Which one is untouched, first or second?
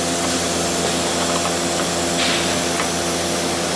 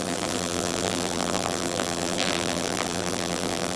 first